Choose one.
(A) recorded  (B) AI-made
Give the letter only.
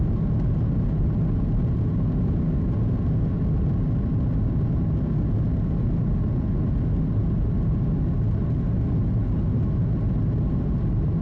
A